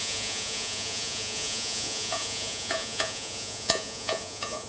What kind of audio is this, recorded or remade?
remade